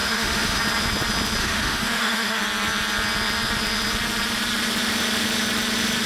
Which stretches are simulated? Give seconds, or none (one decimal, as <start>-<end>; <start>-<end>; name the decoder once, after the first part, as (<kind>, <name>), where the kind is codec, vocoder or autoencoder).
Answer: 0.0-0.6 (autoencoder, DAC-VAE); 1.4-2.4